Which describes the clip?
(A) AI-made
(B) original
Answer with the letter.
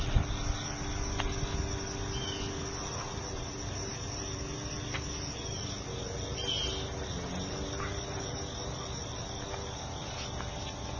B